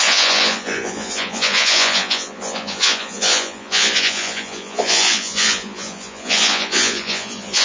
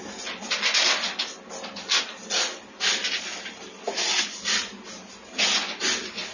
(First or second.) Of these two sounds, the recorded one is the second